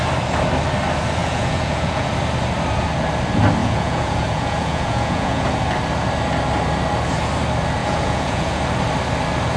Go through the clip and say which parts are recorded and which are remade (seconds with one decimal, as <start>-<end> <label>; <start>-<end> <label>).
0.0-1.2 recorded; 1.2-2.1 remade; 2.1-3.6 recorded; 3.6-5.6 remade; 5.6-7.8 recorded; 7.8-8.6 remade; 8.6-9.6 recorded